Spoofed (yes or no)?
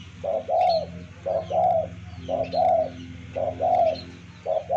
no